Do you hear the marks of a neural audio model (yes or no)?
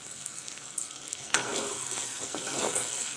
yes